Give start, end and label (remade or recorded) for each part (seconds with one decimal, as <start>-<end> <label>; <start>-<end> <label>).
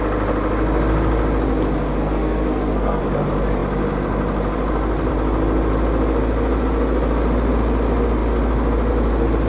0.0-2.0 recorded; 2.0-3.0 remade; 3.0-9.5 recorded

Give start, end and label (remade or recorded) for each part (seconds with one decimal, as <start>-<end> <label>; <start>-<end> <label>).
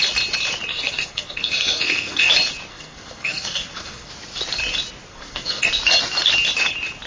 0.0-0.7 recorded; 0.7-2.3 remade; 2.3-2.7 recorded; 2.7-4.1 remade; 4.1-5.1 recorded; 5.1-5.7 remade; 5.7-7.1 recorded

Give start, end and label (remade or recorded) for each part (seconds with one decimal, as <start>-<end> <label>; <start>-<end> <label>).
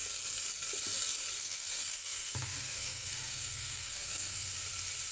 0.0-1.4 recorded; 1.4-4.5 remade; 4.5-5.1 recorded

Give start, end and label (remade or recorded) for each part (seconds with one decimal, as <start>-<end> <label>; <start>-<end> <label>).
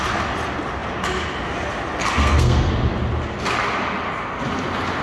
0.0-2.2 recorded; 2.2-2.7 remade; 2.7-5.0 recorded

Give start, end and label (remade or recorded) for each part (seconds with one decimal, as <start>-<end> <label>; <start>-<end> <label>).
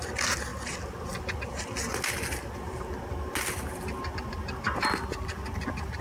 0.0-6.0 recorded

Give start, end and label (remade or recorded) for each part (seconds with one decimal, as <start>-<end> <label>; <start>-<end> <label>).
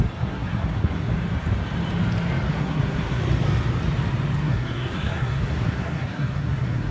0.0-1.1 remade; 1.1-2.5 recorded; 2.5-3.2 remade; 3.2-4.4 recorded; 4.4-6.9 remade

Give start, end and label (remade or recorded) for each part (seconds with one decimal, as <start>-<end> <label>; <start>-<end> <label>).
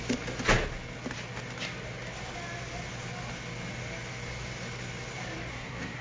0.0-5.5 recorded; 5.5-6.0 remade